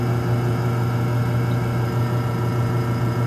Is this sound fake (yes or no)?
yes